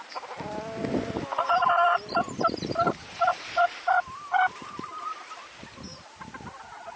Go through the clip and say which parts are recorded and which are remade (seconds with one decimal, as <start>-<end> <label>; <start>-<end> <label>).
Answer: 0.0-1.5 recorded; 1.5-5.4 remade; 5.4-7.0 recorded

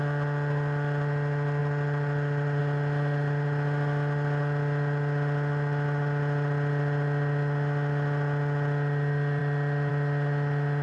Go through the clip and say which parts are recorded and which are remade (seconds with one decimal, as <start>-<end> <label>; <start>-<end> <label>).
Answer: 0.0-1.6 recorded; 1.6-2.6 remade; 2.6-10.8 recorded

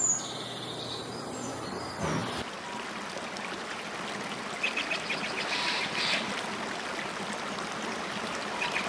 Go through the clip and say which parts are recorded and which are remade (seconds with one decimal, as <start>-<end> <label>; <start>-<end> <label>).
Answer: 0.0-8.9 recorded

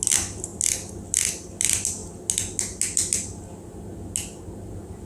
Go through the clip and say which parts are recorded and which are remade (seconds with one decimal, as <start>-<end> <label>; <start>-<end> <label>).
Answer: 0.0-5.0 recorded

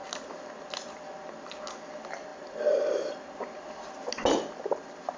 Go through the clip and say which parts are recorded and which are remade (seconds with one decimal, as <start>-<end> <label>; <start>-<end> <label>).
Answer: 0.0-5.2 recorded

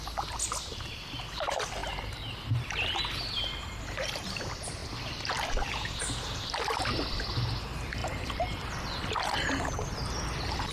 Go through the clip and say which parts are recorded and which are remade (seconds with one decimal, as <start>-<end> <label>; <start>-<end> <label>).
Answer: 0.0-10.7 recorded